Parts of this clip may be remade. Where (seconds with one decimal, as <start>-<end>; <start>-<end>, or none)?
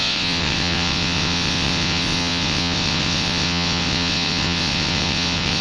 0.0-5.6